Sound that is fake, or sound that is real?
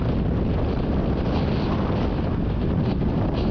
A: real